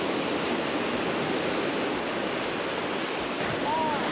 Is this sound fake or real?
real